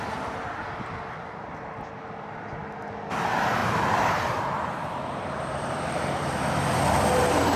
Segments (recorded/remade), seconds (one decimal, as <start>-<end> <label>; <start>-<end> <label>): 0.0-3.6 recorded; 3.6-6.8 remade; 6.8-7.6 recorded